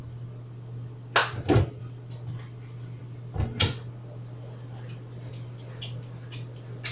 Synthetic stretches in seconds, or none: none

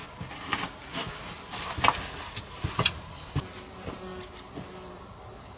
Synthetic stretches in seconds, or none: none

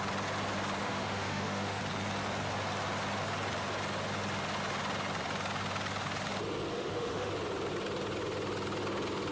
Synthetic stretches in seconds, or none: 0.8-1.8 (autoencoder, DAC-VAE); 6.7-7.3

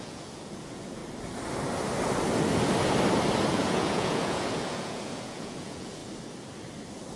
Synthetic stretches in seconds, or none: 0.0-1.0 (vocoder, Vocos); 3.5-6.0

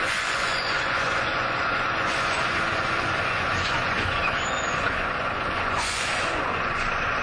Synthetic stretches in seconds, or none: 0.0-7.2 (vocoder, Vocos)